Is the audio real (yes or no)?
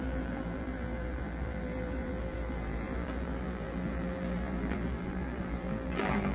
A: no